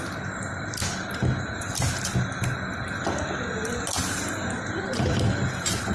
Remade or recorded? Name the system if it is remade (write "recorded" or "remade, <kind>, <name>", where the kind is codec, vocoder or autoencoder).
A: recorded